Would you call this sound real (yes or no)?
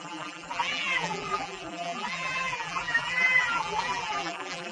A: no